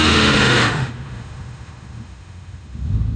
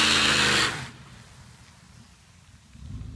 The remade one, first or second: first